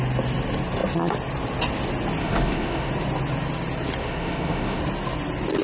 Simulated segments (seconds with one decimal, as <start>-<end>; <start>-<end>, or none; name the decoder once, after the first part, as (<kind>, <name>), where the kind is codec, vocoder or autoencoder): 2.2-2.9 (autoencoder, DAC-VAE); 4.0-4.8